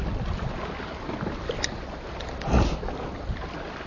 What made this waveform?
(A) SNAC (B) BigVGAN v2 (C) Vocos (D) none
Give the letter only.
D